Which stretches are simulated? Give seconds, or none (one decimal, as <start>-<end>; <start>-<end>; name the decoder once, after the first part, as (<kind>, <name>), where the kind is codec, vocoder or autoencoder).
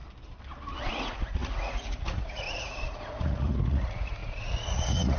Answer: 0.9-5.2 (vocoder, Vocos)